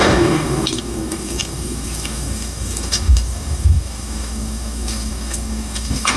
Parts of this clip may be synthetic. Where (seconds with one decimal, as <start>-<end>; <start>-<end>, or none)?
0.0-6.2